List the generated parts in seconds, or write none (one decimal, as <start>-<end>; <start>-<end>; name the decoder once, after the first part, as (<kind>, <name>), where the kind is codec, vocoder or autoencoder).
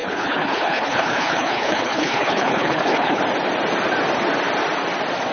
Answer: 0.0-3.2 (codec, HILCodec)